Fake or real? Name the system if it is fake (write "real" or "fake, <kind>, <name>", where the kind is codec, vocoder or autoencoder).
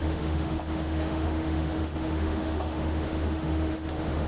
fake, autoencoder, DAC-VAE